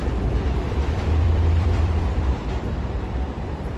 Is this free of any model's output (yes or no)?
no